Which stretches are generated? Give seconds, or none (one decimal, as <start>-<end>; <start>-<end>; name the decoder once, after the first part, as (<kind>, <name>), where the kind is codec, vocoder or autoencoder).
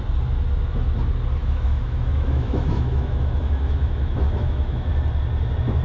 1.4-4.9 (autoencoder, DAC-VAE)